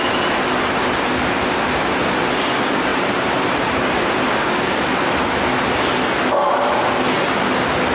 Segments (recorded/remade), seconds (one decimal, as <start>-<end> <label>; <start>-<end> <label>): 0.0-2.9 recorded; 2.9-4.3 remade; 4.3-7.9 recorded